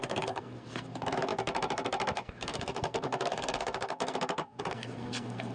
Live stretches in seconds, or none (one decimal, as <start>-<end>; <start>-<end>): none